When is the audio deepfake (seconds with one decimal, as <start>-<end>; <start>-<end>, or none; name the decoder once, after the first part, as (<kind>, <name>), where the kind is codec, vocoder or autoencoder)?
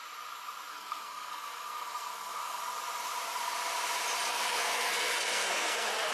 0.7-2.6 (codec, SNAC); 4.3-6.1